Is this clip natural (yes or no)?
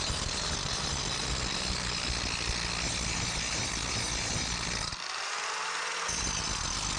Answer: yes